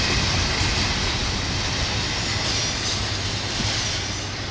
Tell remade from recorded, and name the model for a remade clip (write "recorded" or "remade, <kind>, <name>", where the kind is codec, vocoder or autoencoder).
recorded